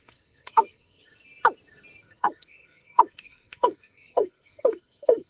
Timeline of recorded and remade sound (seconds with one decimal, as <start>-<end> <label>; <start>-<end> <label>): 0.0-1.0 remade; 1.0-2.0 recorded; 2.0-5.3 remade